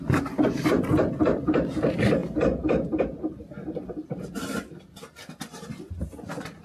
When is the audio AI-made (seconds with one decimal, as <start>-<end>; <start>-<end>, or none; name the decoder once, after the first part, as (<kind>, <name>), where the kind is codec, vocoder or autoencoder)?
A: 2.2-5.0 (vocoder, BigVGAN v2)

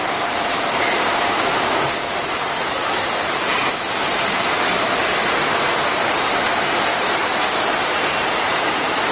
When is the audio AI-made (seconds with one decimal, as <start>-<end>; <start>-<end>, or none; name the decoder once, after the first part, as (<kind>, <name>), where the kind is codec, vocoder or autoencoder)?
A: 0.0-5.0 (vocoder, BigVGAN v2); 8.5-9.1

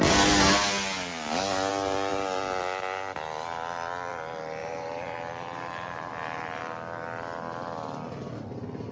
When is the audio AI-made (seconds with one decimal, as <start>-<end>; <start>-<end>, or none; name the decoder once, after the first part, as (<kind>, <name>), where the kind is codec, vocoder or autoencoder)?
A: 4.6-6.6 (vocoder, BigVGAN v2)

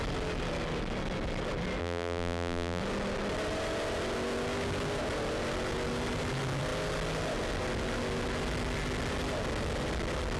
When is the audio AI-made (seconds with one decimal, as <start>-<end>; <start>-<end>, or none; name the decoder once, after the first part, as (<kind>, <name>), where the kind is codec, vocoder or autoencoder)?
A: 1.8-2.8 (vocoder, BigVGAN v2)

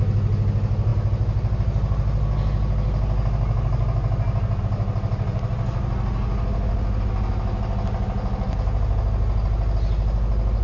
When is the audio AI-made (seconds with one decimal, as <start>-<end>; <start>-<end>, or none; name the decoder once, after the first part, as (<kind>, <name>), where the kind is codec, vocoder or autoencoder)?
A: none

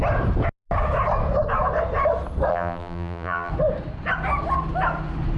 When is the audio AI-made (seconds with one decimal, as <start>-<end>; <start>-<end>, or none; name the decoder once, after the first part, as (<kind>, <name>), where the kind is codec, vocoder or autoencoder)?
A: 2.5-3.5 (vocoder, BigVGAN v2)

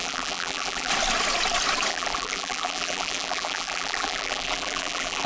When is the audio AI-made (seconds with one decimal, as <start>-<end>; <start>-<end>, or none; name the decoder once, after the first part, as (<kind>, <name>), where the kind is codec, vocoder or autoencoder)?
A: 0.0-0.9 (vocoder, BigVGAN v2); 1.9-5.3

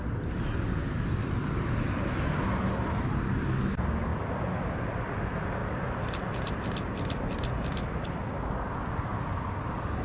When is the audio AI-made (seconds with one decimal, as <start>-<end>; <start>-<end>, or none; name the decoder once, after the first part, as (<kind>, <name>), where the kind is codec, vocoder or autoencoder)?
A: 4.1-5.1 (vocoder, BigVGAN v2); 5.6-6.6